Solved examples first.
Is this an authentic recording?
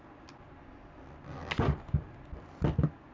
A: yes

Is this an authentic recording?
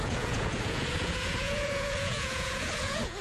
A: no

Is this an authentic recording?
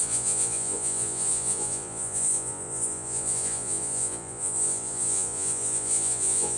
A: no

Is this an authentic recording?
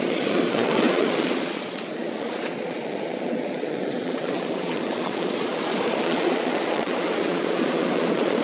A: no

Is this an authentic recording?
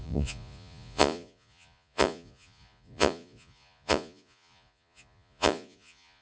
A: no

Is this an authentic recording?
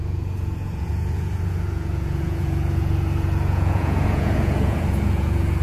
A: no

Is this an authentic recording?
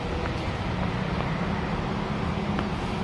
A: yes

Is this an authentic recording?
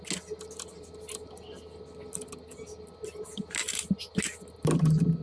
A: yes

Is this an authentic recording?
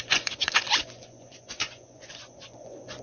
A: no